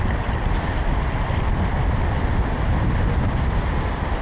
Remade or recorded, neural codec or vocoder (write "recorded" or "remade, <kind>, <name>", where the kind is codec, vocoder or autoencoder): recorded